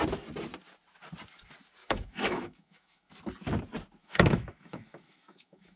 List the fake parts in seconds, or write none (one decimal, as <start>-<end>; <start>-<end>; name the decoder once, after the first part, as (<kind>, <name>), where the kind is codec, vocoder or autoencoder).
1.8-3.1 (autoencoder, DAC-VAE); 4.0-5.8